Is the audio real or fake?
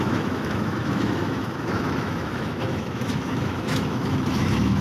fake